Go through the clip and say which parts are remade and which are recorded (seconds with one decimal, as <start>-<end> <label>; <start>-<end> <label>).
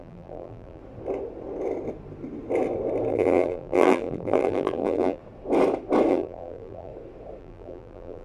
0.0-0.8 remade; 0.8-3.1 recorded; 3.1-5.2 remade; 5.2-6.1 recorded; 6.1-6.9 remade; 6.9-7.4 recorded; 7.4-8.2 remade